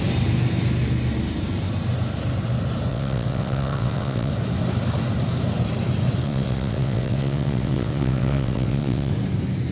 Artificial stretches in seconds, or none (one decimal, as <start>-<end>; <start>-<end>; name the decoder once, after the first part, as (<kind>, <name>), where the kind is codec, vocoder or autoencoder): 2.9-4.3 (vocoder, WaveNeXt); 6.2-9.1

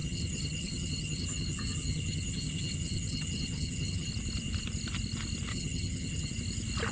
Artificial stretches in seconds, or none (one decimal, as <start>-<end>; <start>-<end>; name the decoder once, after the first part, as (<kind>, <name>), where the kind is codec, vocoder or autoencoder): 0.0-4.1 (vocoder, HiFi-GAN); 5.5-6.3

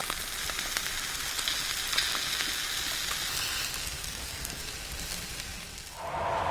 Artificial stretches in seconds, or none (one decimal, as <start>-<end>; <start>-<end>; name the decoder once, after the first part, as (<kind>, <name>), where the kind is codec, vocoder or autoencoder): 3.8-4.6 (codec, SNAC)

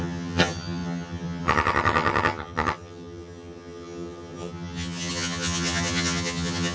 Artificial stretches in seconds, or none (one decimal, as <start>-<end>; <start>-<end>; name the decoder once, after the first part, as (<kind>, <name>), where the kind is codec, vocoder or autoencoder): 0.0-6.7 (vocoder, HiFi-GAN)

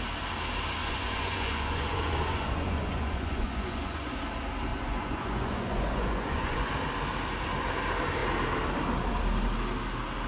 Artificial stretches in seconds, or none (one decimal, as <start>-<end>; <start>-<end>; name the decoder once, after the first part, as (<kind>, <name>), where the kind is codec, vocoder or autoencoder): 0.8-4.1 (vocoder, Vocos); 4.7-6.7

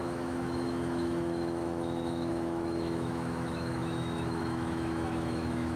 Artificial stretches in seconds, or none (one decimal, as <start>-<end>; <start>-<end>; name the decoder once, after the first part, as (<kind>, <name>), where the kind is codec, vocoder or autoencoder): 0.0-5.8 (autoencoder, DAC-VAE)